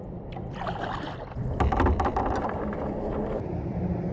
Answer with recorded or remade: remade